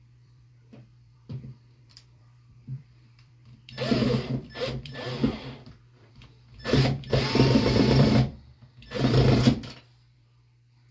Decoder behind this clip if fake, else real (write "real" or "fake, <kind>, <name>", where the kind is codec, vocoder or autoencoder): fake, vocoder, BigVGAN v2